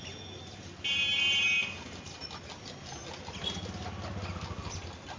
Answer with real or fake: real